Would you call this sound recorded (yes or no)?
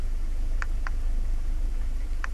no